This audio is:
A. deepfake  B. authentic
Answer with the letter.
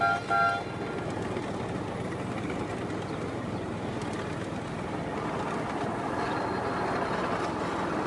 B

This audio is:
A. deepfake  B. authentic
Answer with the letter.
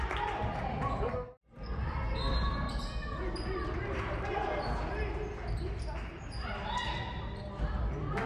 B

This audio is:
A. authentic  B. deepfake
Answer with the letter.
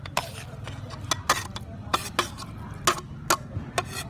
A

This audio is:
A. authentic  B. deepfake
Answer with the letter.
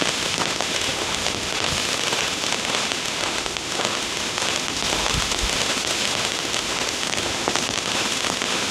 B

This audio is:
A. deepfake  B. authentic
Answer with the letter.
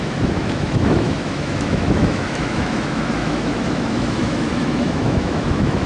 A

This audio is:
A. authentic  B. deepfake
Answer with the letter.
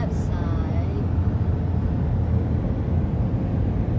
A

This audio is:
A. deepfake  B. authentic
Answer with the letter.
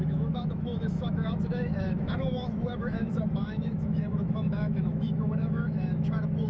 A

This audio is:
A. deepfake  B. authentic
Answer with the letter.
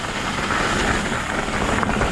B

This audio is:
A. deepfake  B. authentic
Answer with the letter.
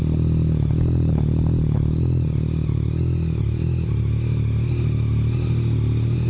B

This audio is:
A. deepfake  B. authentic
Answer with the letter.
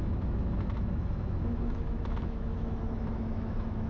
A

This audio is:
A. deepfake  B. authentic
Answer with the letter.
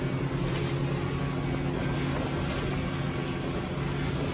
B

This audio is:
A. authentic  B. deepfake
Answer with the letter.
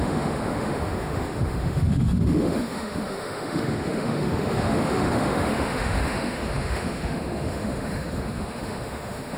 B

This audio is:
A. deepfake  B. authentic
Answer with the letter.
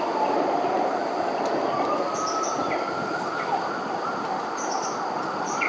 B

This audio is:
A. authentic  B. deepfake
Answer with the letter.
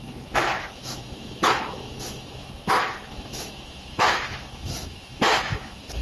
B